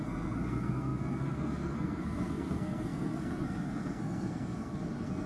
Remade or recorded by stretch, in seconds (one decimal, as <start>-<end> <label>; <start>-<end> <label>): 0.0-5.3 remade